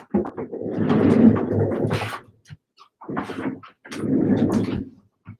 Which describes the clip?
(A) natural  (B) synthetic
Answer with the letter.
A